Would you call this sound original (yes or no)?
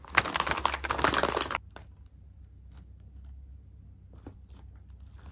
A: yes